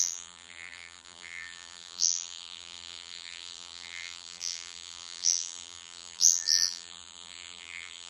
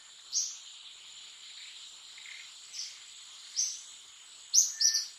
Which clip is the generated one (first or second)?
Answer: first